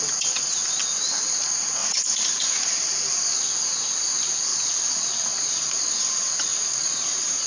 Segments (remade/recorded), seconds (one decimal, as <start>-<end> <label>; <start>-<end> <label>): 0.0-1.8 recorded; 1.8-2.7 remade; 2.7-6.5 recorded; 6.5-7.5 remade